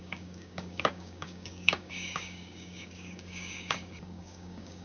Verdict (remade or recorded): remade